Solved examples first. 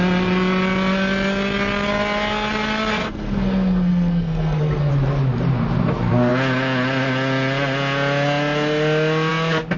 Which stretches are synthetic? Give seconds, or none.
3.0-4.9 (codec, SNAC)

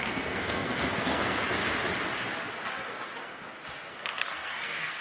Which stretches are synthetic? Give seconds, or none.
0.0-1.6 (codec, SNAC); 2.9-3.4; 3.9-5.0

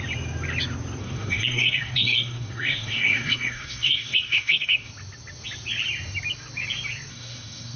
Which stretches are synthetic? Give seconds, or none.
1.0-4.9 (codec, SNAC); 7.1-7.8

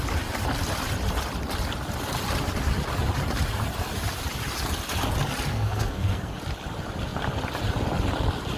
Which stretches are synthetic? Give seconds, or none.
5.5-6.3 (codec, SNAC)